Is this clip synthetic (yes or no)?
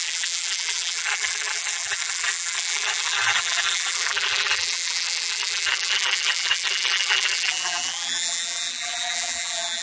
yes